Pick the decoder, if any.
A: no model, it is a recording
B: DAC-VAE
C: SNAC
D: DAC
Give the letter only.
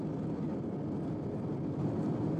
A